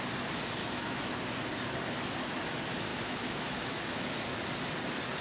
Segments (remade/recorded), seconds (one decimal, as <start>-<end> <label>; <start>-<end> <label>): 0.0-0.6 recorded; 0.6-1.1 remade; 1.1-2.9 recorded; 2.9-3.8 remade; 3.8-5.2 recorded